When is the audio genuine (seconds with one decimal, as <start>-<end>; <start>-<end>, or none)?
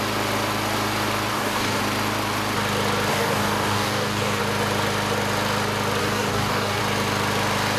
0.0-1.3; 1.8-3.1; 4.4-6.0; 6.8-7.8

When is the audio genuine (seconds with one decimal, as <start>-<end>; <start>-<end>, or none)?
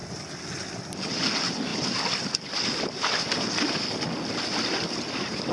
0.0-5.5